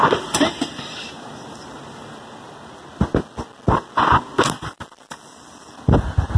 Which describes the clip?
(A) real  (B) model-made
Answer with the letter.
A